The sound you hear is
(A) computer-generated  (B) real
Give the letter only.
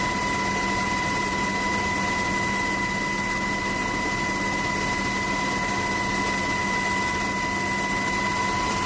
B